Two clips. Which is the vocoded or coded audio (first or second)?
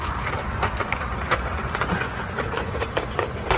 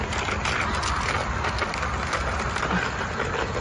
first